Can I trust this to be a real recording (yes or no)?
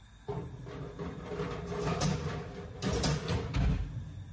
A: yes